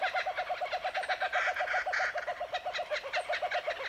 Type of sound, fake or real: real